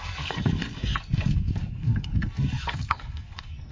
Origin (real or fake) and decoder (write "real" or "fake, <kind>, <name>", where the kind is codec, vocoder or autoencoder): fake, codec, SNAC